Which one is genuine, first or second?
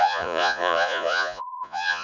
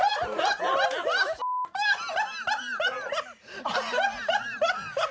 second